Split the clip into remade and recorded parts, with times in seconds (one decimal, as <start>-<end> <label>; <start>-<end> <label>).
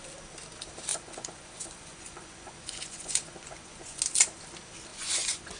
0.0-0.9 recorded; 0.9-4.0 remade; 4.0-4.9 recorded; 4.9-5.6 remade